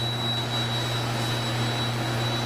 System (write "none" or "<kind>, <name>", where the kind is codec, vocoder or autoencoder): none